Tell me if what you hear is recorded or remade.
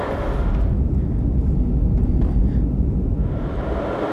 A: recorded